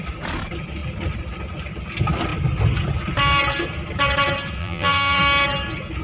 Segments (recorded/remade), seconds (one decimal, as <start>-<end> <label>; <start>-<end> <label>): 0.0-4.6 recorded; 4.6-5.2 remade; 5.2-6.0 recorded